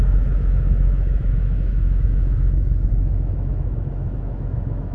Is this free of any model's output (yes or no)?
no